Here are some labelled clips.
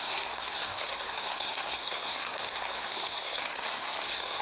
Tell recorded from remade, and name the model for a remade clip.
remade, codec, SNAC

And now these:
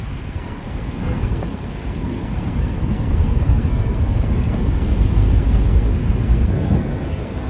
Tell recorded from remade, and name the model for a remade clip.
remade, codec, SNAC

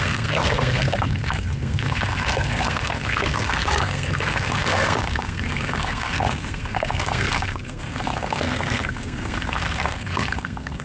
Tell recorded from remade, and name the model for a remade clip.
remade, codec, SNAC